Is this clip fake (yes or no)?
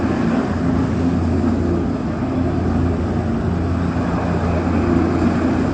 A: no